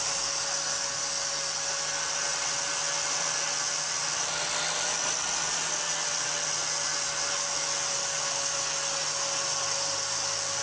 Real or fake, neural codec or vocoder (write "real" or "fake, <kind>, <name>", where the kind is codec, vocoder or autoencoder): real